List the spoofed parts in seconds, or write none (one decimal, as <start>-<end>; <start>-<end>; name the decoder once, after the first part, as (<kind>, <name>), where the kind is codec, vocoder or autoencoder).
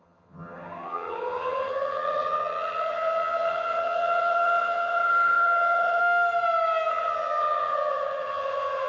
0.0-6.0 (vocoder, HiFi-GAN); 6.9-8.9